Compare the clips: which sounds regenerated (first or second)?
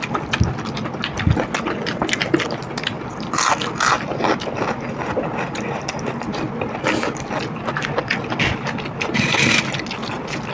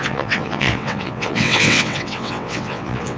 second